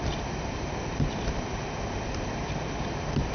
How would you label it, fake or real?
fake